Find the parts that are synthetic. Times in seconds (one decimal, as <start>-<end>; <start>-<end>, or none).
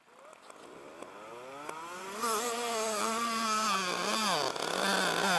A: none